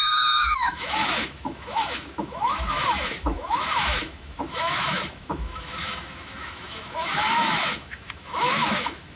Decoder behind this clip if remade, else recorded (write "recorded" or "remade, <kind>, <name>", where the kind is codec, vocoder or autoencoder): remade, autoencoder, DAC-VAE